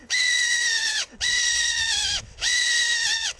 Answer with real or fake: fake